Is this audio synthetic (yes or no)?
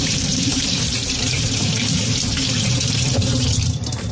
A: yes